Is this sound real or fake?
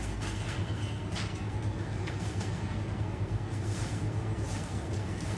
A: fake